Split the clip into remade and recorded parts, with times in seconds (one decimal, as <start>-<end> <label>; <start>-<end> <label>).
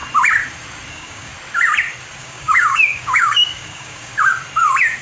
0.0-0.9 recorded; 0.9-1.3 remade; 1.3-2.2 recorded; 2.2-4.1 remade; 4.1-5.0 recorded